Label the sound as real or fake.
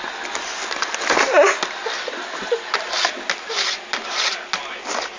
real